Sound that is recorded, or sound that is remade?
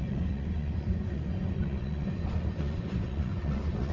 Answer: remade